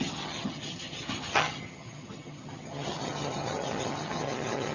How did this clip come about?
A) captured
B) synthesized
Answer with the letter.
B